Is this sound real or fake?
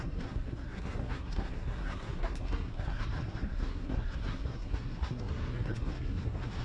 fake